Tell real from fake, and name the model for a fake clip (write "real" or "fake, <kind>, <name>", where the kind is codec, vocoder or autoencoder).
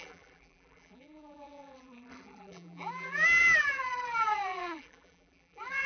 fake, vocoder, BigVGAN v2